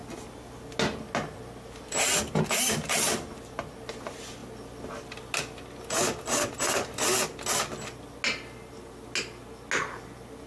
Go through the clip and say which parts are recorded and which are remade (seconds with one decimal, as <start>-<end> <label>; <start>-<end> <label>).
0.0-10.5 recorded